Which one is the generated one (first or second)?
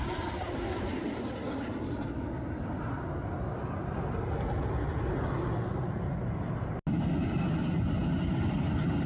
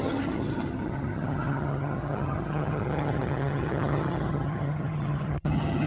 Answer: second